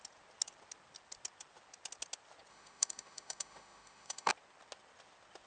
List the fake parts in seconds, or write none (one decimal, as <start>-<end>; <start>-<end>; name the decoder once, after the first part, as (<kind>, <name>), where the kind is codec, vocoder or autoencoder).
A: 2.5-4.3 (autoencoder, DAC-VAE)